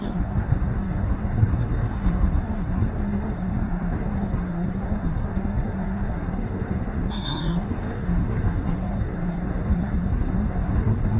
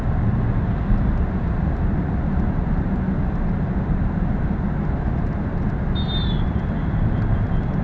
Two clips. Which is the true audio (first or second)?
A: second